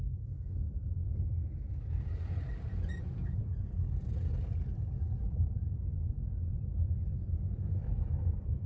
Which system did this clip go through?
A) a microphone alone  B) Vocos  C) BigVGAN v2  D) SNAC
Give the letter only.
C